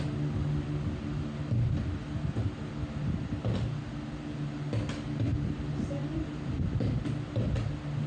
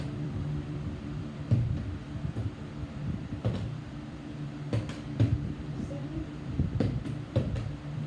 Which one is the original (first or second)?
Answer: first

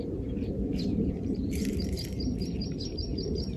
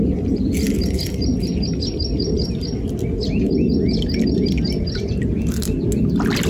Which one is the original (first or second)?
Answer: second